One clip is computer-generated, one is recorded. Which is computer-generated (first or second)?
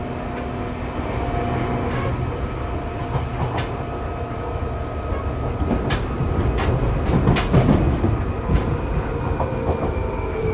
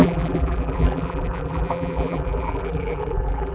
second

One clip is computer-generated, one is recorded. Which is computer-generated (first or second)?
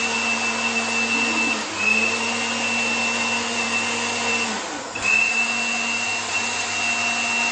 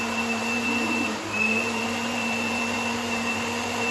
second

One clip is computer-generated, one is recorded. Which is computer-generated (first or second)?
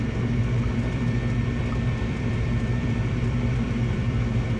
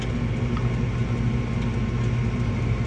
first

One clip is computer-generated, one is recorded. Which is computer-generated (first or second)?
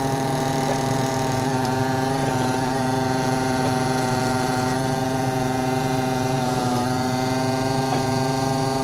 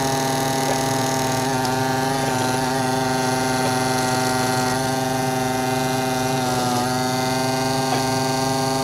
first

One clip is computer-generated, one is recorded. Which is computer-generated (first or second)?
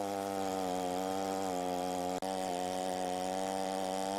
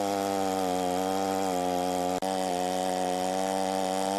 first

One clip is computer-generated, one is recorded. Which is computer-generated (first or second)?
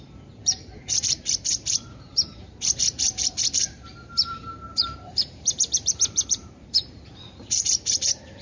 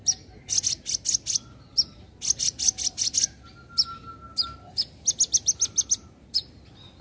first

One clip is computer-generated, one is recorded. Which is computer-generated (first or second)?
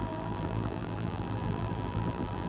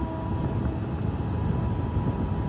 first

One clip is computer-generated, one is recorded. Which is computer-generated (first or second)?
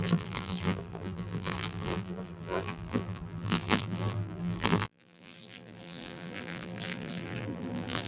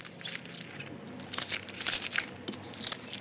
first